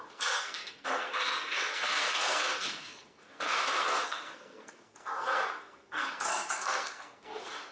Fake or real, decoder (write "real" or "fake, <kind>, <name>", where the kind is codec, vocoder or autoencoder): fake, codec, SNAC